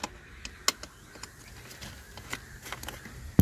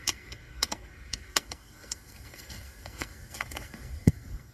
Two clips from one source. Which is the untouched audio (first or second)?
first